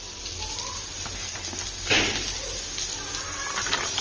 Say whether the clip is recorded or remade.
recorded